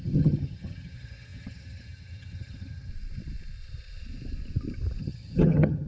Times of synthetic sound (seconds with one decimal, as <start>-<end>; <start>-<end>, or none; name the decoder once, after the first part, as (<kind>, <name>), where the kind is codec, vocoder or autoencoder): 0.0-2.9 (vocoder, HiFi-GAN); 5.0-5.9